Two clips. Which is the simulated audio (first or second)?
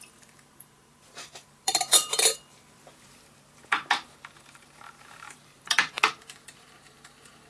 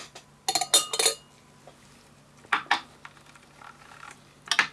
first